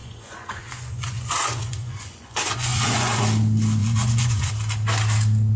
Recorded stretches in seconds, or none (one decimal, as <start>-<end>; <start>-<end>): 3.2-3.8; 4.5-5.6